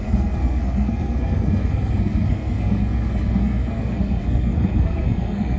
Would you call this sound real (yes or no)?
no